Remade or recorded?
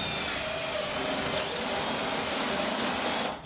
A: recorded